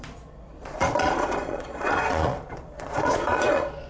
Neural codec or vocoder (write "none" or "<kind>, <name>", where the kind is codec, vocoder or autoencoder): vocoder, Vocos